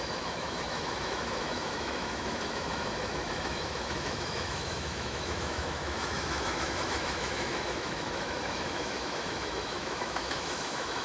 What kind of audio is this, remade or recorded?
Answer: remade